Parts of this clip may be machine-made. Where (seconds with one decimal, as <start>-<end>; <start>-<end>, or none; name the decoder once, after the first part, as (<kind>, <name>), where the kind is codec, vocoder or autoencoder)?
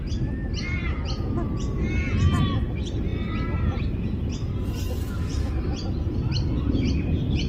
none